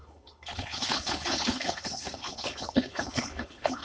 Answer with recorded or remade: remade